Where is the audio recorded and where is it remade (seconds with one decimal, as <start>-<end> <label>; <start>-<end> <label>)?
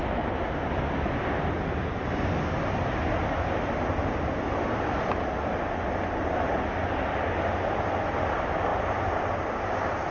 0.0-10.1 recorded